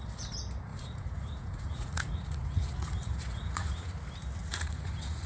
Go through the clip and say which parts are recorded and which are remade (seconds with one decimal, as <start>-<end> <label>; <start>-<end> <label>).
0.0-0.7 recorded; 0.7-3.9 remade; 3.9-4.4 recorded; 4.4-5.3 remade